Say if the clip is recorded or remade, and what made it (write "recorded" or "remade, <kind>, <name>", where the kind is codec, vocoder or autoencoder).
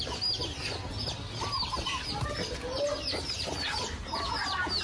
recorded